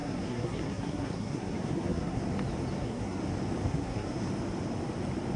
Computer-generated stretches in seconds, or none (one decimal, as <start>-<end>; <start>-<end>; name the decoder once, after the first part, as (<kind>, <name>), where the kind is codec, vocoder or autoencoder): 0.0-2.2 (codec, SNAC); 2.8-3.2; 3.7-4.3

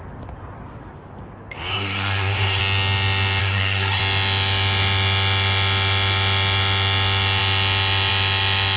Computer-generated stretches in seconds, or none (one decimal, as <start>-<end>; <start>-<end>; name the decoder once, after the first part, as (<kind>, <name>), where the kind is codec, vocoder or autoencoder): 1.7-2.6 (codec, SNAC); 3.4-4.0